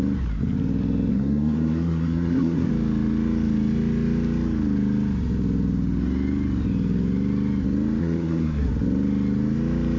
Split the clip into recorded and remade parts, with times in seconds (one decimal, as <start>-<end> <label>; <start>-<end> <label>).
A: 0.0-1.1 recorded; 1.1-2.7 remade; 2.7-8.0 recorded; 8.0-8.7 remade; 8.7-10.0 recorded